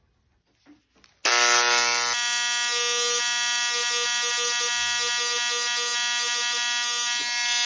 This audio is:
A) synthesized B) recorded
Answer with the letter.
B